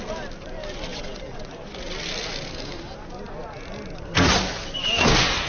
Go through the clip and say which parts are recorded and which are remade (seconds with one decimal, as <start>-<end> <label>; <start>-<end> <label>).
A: 0.0-0.9 recorded; 0.9-1.5 remade; 1.5-5.5 recorded